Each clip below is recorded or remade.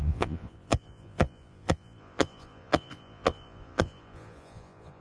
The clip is remade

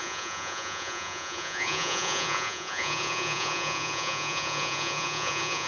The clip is remade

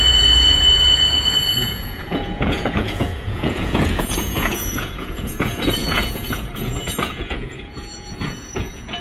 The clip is remade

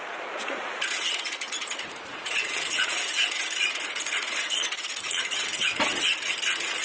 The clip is remade